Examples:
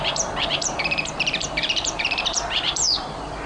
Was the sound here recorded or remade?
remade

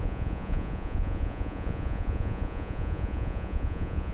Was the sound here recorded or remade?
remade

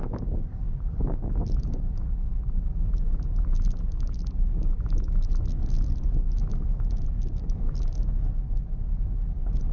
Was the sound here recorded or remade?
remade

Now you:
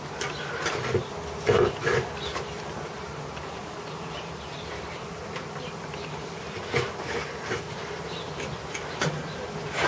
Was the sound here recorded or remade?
recorded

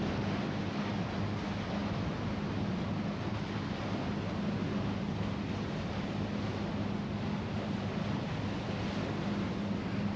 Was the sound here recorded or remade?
recorded